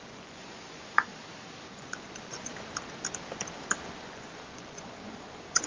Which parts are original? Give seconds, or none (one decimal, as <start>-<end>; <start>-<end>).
1.1-1.7; 2.5-4.0